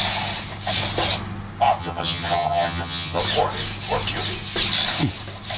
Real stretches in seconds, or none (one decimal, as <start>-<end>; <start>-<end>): 0.0-1.8; 3.2-5.6